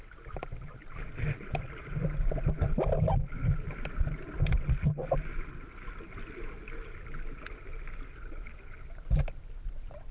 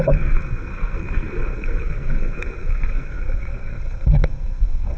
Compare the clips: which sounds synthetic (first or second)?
second